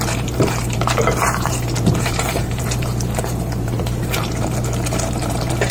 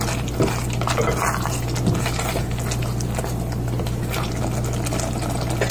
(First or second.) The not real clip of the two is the first